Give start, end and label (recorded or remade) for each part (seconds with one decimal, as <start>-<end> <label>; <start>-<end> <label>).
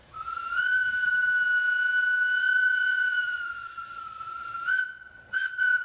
0.0-0.9 remade; 0.9-2.4 recorded; 2.4-5.8 remade